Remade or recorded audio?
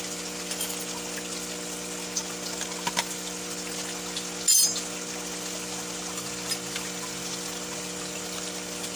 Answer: recorded